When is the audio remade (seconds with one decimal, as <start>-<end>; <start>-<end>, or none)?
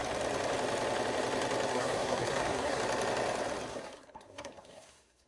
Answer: 1.7-2.8; 3.7-5.3